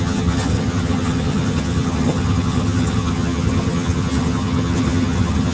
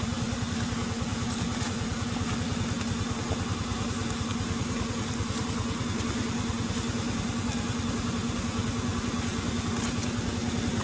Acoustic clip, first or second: second